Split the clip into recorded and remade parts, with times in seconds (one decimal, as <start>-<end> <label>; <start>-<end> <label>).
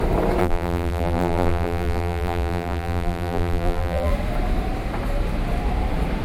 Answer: 0.0-0.4 recorded; 0.4-4.1 remade; 4.1-6.2 recorded